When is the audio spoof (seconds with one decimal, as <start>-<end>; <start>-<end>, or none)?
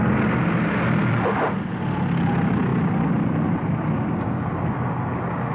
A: none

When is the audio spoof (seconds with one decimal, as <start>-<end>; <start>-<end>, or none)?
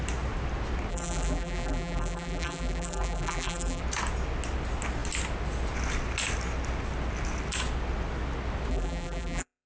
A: 0.9-3.8; 8.7-9.7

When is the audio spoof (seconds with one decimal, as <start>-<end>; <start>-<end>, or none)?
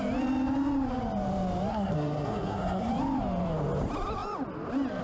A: 1.7-2.9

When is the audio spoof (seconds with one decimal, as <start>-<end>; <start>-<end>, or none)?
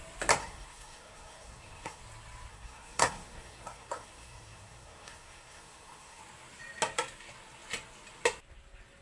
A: 0.4-2.0; 2.5-6.2